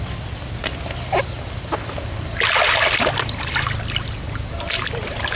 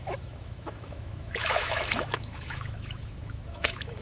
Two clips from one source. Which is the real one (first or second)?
first